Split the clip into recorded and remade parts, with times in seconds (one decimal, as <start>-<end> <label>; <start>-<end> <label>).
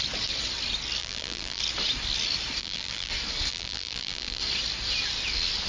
0.0-1.0 recorded; 1.0-1.6 remade; 1.6-2.6 recorded; 2.6-3.1 remade; 3.1-3.5 recorded; 3.5-4.4 remade; 4.4-5.7 recorded